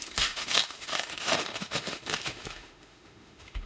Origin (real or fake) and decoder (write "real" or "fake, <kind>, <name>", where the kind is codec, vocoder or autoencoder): fake, autoencoder, DAC-VAE